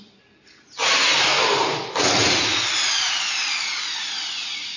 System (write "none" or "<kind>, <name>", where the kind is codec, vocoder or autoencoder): none